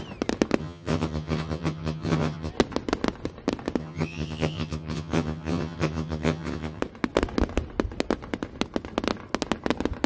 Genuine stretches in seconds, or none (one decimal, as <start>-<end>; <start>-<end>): 0.0-0.6; 2.5-3.8; 6.8-10.1